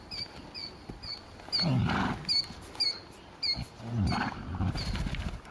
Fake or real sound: real